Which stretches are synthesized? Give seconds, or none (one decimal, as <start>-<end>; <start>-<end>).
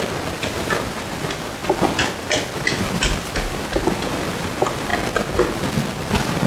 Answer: none